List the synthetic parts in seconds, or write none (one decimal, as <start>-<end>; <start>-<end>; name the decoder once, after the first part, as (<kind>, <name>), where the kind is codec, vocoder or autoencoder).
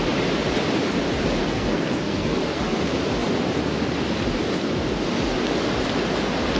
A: 1.4-2.8 (codec, SNAC)